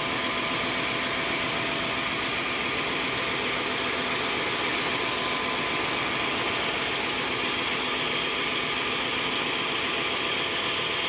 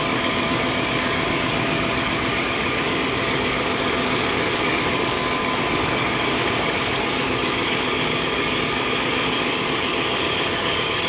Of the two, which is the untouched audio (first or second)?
first